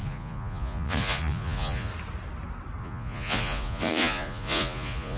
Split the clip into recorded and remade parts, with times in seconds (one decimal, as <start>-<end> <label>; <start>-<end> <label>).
0.0-1.9 remade; 1.9-2.8 recorded; 2.8-5.2 remade